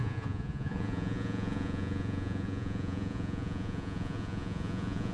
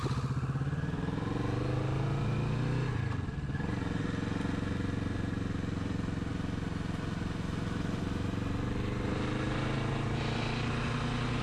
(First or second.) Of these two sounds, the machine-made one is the first